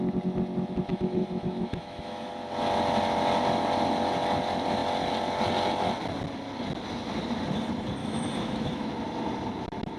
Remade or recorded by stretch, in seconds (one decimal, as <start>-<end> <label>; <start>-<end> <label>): 0.0-0.9 recorded; 0.9-2.3 remade; 2.3-8.0 recorded; 8.0-8.9 remade; 8.9-10.0 recorded